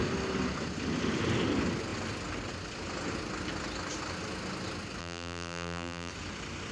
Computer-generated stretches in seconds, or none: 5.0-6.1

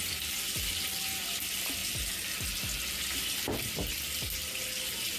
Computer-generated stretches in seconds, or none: none

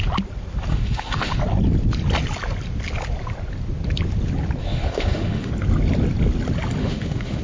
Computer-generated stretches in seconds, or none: 0.7-1.4; 4.6-5.5; 6.8-7.4

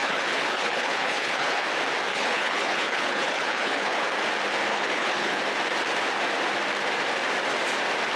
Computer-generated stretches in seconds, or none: 0.0-1.7; 2.1-4.1; 4.7-5.4

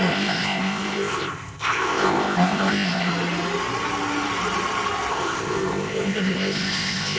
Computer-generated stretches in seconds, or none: 0.0-3.1; 5.1-7.2